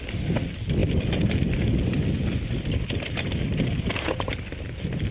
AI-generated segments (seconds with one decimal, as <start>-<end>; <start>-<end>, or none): none

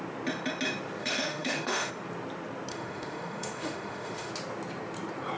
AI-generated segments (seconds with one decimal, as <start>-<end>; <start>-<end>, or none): 1.0-1.9; 2.7-4.3

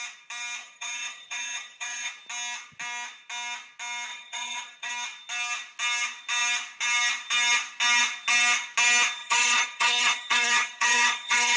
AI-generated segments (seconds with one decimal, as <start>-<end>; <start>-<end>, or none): 0.6-2.1; 4.1-4.9; 9.2-11.6

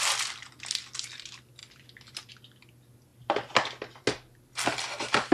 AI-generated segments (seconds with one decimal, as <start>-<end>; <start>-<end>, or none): 1.6-2.3

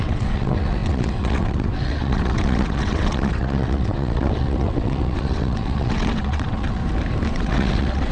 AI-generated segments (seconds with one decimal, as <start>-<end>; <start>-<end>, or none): 0.0-6.8; 7.3-8.1

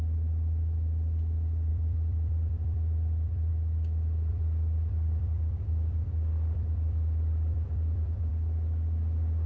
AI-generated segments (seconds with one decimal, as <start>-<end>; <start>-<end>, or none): 1.7-3.5; 4.3-8.3

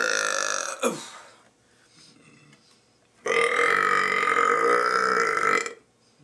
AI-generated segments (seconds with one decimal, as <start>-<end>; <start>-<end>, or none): none

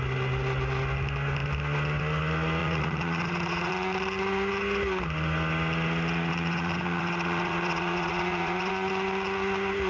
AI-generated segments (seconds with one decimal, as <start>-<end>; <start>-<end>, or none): 2.6-3.7; 6.3-8.7